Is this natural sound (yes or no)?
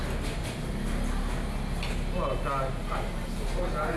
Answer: yes